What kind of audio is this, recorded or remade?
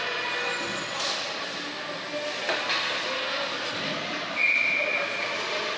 recorded